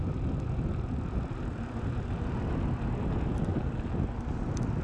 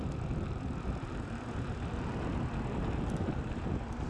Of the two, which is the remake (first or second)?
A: second